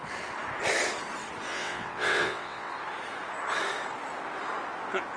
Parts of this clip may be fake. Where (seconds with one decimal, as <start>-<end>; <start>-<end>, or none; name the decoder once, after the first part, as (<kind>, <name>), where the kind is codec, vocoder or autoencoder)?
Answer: 1.5-2.7 (vocoder, WaveNeXt)